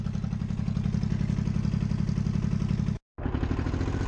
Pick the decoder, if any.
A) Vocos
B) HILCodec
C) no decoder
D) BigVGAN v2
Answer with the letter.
C